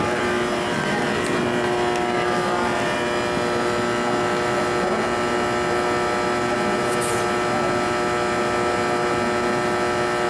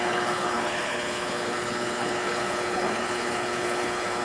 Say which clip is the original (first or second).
first